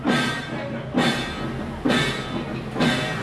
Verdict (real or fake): real